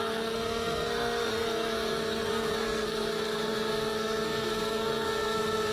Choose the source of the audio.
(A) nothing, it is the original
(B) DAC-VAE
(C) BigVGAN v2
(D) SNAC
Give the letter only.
D